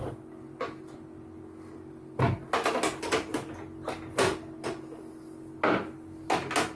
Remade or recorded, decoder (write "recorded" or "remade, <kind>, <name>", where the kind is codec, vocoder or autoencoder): recorded